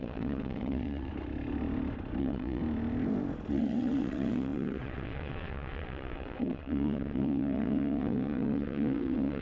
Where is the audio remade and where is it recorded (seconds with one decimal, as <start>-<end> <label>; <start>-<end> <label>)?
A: 0.0-1.1 remade; 1.1-2.2 recorded; 2.2-2.6 remade; 2.6-3.5 recorded; 3.5-9.4 remade